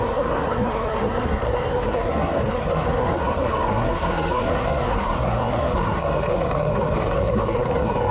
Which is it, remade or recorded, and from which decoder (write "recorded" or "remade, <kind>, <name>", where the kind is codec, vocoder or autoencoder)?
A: remade, codec, SNAC